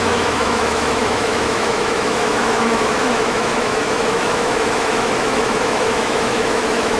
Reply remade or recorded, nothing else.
remade